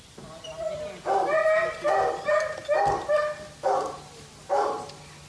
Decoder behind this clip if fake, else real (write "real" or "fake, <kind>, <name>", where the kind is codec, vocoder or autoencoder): real